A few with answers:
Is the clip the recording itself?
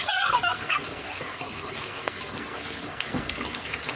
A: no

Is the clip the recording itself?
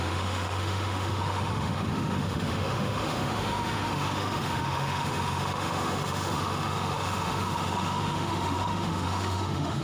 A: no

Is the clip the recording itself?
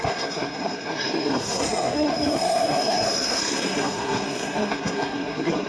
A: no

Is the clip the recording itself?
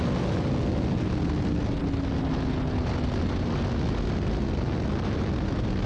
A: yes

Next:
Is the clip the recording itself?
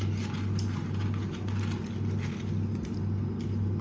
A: yes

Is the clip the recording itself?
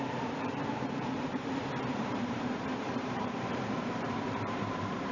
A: no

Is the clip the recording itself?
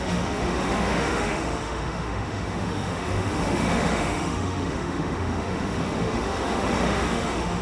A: no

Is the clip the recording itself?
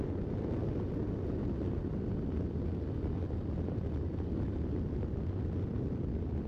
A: yes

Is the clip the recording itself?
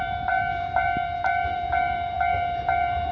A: no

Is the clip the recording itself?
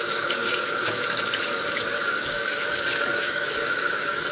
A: no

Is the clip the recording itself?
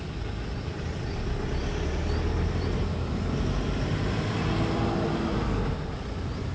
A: yes